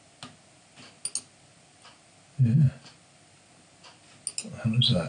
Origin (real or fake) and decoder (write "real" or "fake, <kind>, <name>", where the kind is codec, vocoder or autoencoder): real